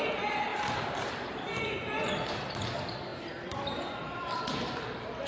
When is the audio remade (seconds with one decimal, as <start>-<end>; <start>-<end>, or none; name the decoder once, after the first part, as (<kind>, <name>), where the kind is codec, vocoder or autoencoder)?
0.5-2.2 (vocoder, BigVGAN v2); 3.1-3.9